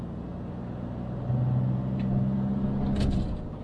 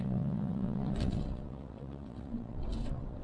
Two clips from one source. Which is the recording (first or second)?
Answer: first